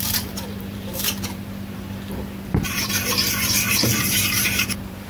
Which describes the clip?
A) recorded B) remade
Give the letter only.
B